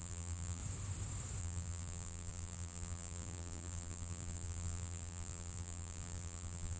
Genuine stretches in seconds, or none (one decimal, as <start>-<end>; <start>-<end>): 0.6-1.4

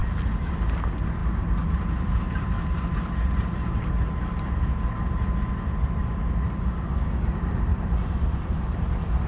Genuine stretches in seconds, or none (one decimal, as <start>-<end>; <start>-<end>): 0.5-1.2; 4.9-7.7; 8.8-9.3

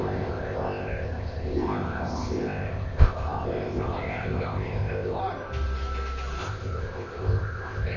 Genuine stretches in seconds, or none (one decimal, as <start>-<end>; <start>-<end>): 5.2-6.4

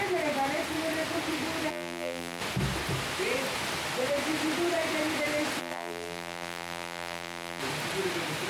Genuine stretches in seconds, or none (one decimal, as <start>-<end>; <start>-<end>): 0.0-1.7; 2.4-5.6; 7.6-8.5

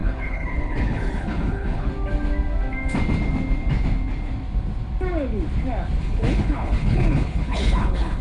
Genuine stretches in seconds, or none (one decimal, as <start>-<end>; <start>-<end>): 1.9-6.0